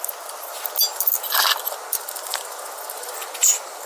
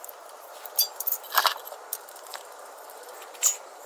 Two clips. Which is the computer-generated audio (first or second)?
second